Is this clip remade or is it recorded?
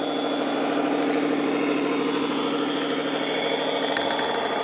recorded